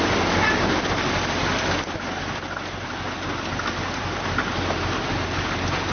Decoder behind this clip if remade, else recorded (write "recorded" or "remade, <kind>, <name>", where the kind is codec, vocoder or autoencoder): recorded